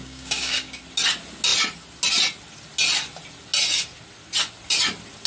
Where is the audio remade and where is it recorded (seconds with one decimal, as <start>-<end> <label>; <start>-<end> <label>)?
0.0-0.8 remade; 0.8-5.3 recorded